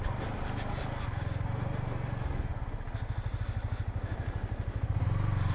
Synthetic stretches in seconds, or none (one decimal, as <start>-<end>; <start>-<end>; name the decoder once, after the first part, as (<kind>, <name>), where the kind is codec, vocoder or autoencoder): none